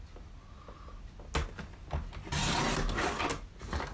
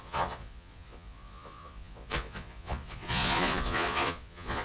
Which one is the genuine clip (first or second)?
first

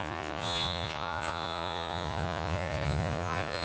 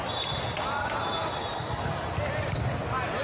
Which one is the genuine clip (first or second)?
second